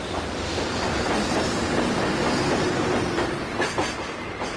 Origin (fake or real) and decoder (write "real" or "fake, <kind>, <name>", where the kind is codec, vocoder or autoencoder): fake, vocoder, BigVGAN v2